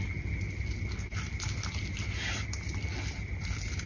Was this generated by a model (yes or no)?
no